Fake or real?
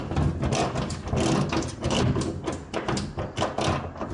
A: real